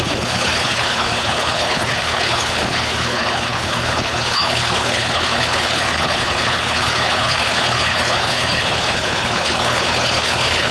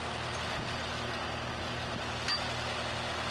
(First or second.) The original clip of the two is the second